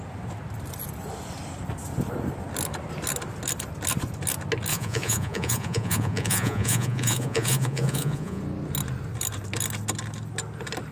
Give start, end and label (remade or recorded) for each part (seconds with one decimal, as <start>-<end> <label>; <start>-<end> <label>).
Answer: 0.0-4.7 recorded; 4.7-8.4 remade; 8.4-10.9 recorded